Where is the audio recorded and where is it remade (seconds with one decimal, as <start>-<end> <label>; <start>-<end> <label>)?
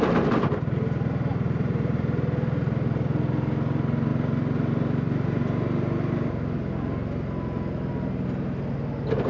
0.0-1.3 recorded; 1.3-2.0 remade; 2.0-9.3 recorded